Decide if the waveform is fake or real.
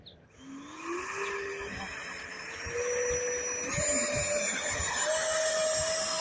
real